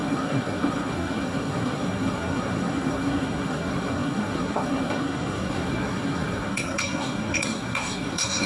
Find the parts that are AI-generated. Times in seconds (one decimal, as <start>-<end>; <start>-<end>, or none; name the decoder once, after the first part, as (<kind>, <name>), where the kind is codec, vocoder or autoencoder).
0.0-8.5 (codec, SNAC)